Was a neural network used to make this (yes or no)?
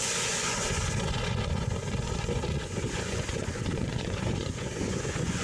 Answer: yes